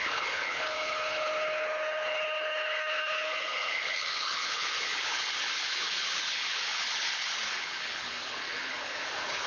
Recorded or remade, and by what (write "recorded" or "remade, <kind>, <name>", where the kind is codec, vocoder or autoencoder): remade, codec, HILCodec